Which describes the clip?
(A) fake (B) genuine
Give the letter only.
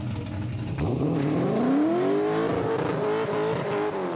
B